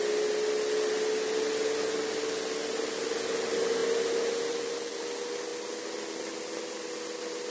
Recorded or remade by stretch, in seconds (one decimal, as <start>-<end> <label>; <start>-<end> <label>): 0.0-7.5 recorded